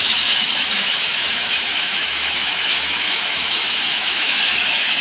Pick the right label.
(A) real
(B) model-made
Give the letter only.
B